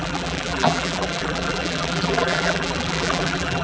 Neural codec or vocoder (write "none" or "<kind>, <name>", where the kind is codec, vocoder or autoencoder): vocoder, BigVGAN v2